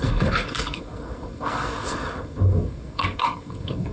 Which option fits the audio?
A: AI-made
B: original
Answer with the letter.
A